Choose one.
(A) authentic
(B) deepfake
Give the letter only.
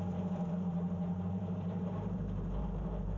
B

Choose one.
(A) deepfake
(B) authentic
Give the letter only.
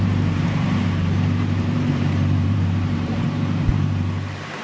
A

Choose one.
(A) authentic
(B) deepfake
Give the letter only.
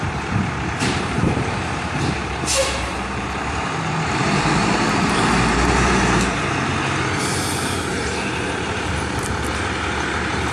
B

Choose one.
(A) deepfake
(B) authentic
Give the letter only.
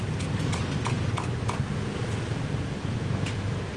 B